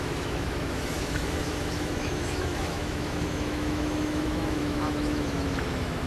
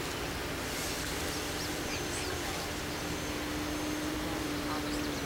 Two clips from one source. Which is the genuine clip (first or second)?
second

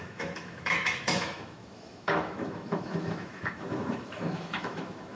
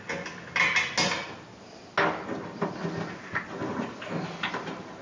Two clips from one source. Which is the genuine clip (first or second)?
second